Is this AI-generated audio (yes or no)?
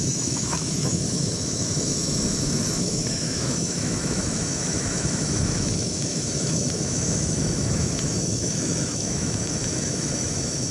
yes